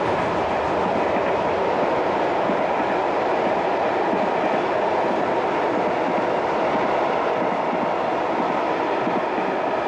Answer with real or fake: real